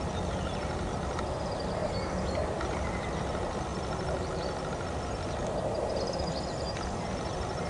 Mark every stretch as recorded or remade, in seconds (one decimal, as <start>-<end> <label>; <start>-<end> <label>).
0.0-7.7 recorded